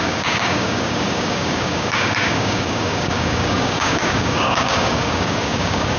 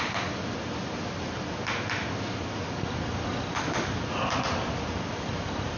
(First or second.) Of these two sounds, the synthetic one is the first